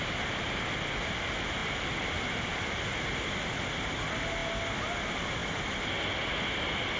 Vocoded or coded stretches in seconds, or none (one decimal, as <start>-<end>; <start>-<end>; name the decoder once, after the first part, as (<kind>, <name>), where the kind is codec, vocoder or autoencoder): 1.6-2.2 (vocoder, BigVGAN v2); 5.4-5.9